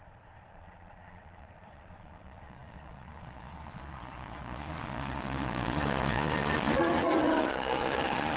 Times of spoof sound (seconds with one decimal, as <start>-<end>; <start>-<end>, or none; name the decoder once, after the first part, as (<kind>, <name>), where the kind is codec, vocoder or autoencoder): 0.0-8.4 (vocoder, Vocos)